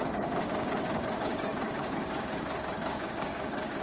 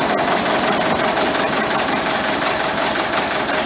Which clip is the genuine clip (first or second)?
second